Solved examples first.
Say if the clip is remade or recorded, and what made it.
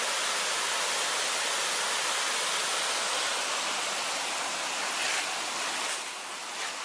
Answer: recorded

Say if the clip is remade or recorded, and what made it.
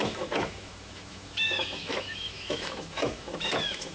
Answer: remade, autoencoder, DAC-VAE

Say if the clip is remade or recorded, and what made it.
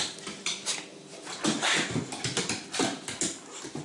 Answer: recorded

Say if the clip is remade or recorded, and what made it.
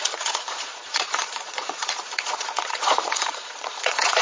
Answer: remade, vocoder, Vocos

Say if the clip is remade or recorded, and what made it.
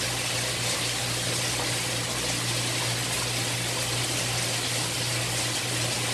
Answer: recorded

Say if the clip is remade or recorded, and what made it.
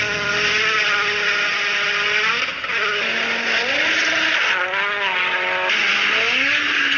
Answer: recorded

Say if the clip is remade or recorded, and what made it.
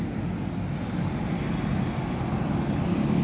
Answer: recorded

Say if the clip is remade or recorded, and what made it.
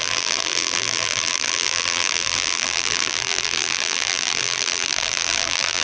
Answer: remade, vocoder, BigVGAN v2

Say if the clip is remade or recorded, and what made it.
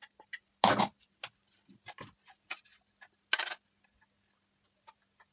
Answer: recorded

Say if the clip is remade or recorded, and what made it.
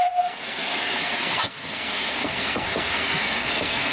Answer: remade, codec, SNAC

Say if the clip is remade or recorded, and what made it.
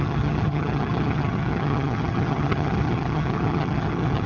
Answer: remade, vocoder, HiFi-GAN